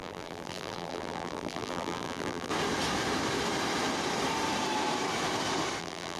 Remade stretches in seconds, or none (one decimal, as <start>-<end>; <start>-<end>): 0.0-2.5; 5.8-6.2